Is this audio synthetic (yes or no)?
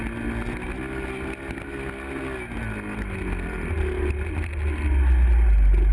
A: no